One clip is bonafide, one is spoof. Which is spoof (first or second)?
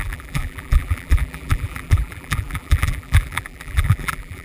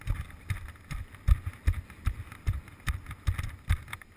first